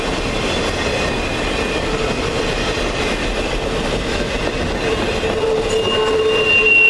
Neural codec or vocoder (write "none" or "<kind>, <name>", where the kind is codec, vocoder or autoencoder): none